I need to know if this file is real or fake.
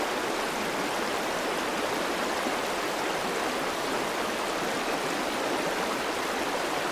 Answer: real